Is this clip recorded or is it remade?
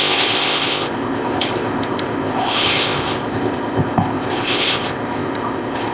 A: remade